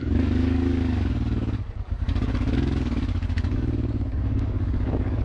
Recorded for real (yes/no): no